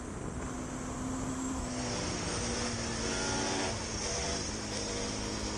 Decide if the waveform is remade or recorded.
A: recorded